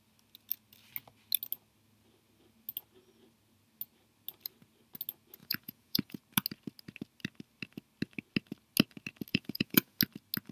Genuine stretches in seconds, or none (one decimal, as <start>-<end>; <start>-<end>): 0.0-5.4; 6.2-9.3; 10.0-10.5